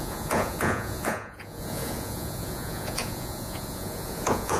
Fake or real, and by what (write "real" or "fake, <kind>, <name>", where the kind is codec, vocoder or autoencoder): fake, vocoder, Vocos